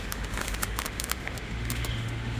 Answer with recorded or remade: remade